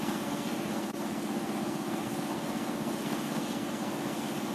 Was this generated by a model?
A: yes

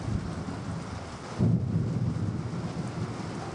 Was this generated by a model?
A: no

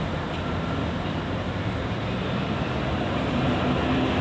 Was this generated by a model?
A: no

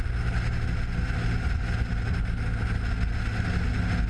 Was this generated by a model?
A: no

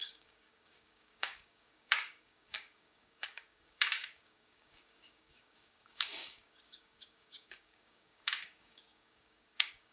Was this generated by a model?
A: yes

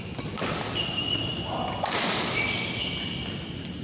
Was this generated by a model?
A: no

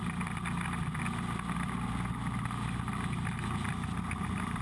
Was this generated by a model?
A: no